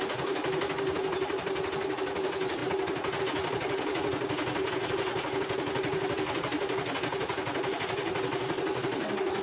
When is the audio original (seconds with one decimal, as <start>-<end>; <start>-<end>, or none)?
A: 0.0-9.4